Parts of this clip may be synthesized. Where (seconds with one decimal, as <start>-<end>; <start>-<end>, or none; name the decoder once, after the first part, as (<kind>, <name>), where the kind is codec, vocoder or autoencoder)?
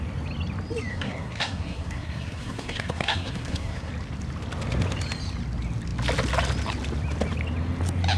0.9-3.9 (codec, SNAC)